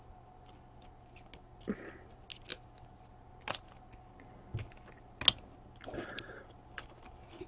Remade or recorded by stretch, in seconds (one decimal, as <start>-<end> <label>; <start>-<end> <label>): 0.0-7.5 recorded